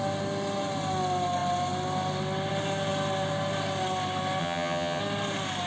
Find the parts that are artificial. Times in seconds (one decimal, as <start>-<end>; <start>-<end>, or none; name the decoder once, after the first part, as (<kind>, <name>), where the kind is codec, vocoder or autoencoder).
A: 4.4-5.0 (vocoder, HiFi-GAN)